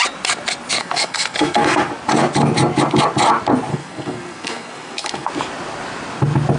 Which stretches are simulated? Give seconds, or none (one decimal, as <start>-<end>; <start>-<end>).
0.8-1.8; 3.7-5.3